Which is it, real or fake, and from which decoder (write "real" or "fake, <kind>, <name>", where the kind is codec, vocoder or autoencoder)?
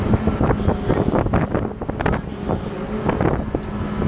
real